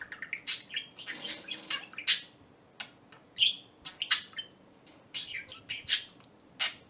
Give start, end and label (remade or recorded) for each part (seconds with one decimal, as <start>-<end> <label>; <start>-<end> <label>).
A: 0.0-6.9 recorded